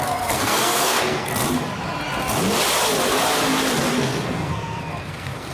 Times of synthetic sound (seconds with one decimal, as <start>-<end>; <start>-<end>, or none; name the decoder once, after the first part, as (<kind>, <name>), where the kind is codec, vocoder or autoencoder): 0.0-1.3 (codec, SNAC); 3.9-5.5